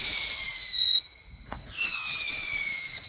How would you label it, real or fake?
fake